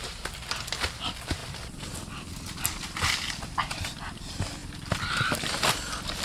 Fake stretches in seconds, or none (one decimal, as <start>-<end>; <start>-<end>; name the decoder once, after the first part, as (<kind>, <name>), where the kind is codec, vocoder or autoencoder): 1.4-1.9 (vocoder, BigVGAN v2); 4.6-6.2